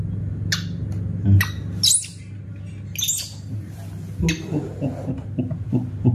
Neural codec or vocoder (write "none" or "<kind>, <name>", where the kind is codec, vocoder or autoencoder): none